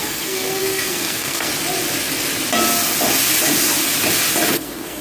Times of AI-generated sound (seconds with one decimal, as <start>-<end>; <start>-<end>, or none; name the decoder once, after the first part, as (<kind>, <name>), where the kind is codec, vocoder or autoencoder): 0.0-1.5 (codec, SNAC); 4.5-5.0